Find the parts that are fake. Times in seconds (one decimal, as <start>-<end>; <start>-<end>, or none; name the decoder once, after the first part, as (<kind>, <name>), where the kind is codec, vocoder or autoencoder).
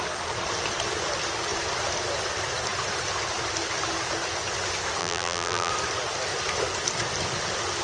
5.0-5.7 (vocoder, BigVGAN v2)